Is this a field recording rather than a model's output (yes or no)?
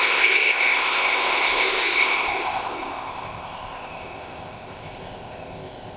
no